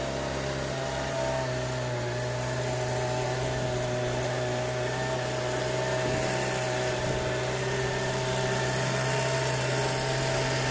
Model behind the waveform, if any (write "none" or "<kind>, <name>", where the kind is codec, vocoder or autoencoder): none